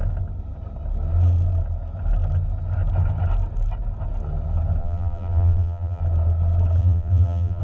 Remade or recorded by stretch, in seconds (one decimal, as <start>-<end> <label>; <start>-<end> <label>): 0.0-4.8 recorded; 4.8-6.0 remade; 6.0-6.8 recorded; 6.8-7.6 remade